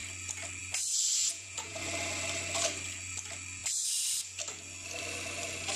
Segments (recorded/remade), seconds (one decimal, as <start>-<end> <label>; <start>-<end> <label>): 0.0-1.2 recorded; 1.2-1.8 remade; 1.8-5.8 recorded